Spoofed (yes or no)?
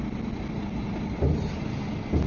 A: no